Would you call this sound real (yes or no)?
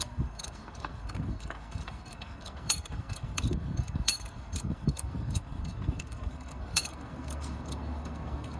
no